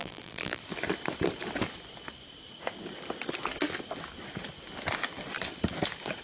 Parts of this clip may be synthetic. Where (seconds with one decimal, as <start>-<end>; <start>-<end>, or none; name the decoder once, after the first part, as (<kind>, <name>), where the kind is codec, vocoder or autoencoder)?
0.0-0.6 (vocoder, BigVGAN v2)